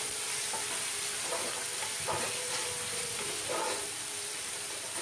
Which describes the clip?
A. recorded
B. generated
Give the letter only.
B